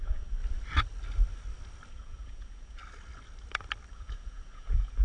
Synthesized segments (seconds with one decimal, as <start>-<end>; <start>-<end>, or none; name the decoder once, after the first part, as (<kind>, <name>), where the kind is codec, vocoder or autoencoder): 0.0-0.4 (vocoder, Vocos); 1.9-2.8; 3.9-5.0